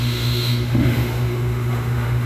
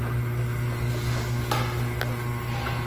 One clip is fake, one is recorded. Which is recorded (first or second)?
second